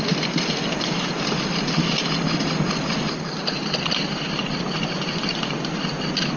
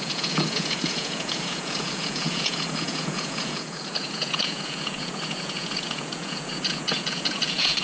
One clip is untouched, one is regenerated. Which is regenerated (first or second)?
second